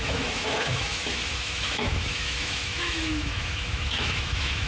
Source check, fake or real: fake